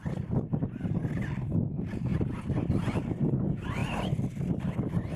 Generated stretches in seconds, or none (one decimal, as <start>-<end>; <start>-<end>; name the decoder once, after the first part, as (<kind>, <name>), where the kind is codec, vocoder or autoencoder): 2.1-3.2 (vocoder, BigVGAN v2)